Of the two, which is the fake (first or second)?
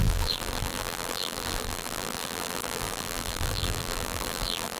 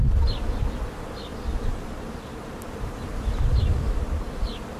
first